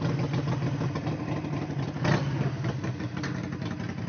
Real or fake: real